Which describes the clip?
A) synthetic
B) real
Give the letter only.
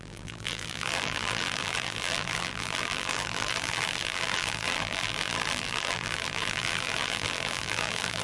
A